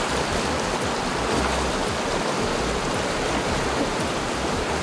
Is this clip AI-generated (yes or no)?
no